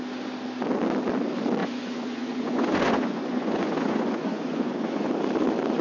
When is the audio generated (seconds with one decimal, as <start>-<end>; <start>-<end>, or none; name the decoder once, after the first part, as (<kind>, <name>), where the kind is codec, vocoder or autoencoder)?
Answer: 1.6-5.1 (vocoder, Vocos)